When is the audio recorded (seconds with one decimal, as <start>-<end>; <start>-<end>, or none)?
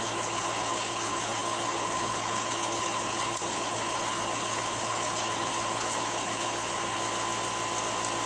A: 7.0-8.3